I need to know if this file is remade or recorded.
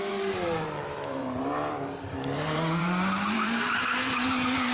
remade